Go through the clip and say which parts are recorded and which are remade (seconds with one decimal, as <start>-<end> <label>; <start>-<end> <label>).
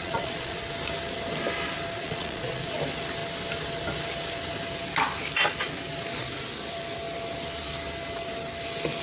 0.0-0.6 remade; 0.6-2.0 recorded; 2.0-2.7 remade; 2.7-9.0 recorded